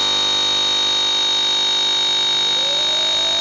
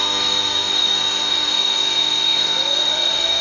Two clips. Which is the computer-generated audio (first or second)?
second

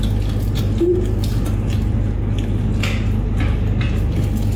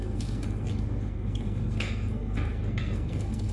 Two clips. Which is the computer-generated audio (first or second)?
second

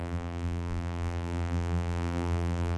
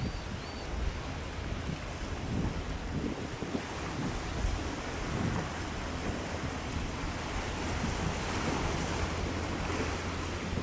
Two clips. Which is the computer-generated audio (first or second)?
first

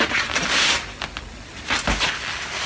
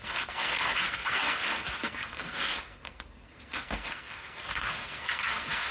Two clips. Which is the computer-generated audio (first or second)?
second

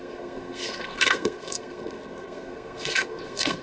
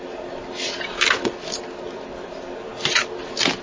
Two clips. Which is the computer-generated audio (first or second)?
first